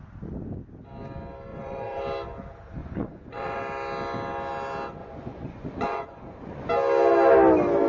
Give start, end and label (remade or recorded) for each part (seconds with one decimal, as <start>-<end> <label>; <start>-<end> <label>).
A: 0.0-1.5 recorded; 1.5-2.0 remade; 2.0-2.8 recorded; 2.8-3.6 remade; 3.6-5.0 recorded; 5.0-6.7 remade; 6.7-7.9 recorded